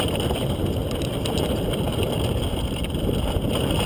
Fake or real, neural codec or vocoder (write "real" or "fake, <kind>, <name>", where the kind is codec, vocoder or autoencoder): real